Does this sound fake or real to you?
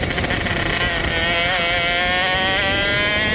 real